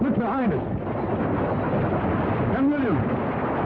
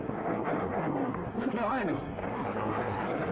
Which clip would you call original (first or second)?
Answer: first